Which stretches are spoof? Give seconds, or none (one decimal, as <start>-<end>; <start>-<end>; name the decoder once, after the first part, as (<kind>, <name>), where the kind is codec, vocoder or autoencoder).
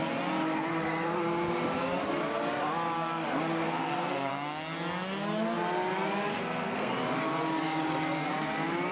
3.7-4.3 (codec, SNAC); 6.3-6.9